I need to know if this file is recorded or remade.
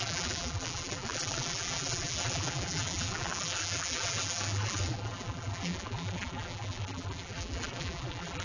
remade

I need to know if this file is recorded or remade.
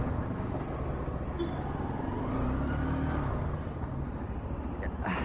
recorded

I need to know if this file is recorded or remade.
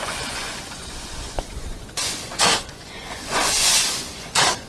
remade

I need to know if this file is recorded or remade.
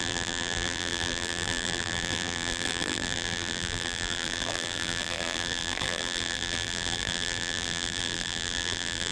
remade